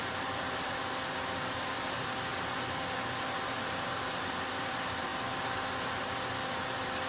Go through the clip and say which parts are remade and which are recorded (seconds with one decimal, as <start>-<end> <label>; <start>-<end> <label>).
0.0-2.3 remade; 2.3-3.9 recorded; 3.9-5.1 remade; 5.1-7.1 recorded